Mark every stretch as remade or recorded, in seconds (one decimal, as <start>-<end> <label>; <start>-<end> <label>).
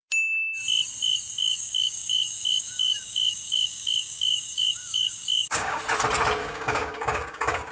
0.0-1.4 recorded; 1.4-5.8 remade; 5.8-6.4 recorded; 6.4-7.7 remade